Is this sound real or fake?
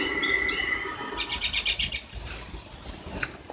real